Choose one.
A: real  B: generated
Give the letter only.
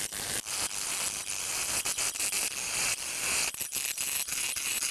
A